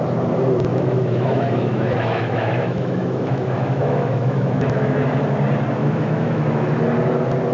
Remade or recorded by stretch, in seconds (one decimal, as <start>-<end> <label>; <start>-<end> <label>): 0.0-0.7 recorded; 0.7-5.2 remade; 5.2-5.8 recorded; 5.8-6.7 remade; 6.7-7.5 recorded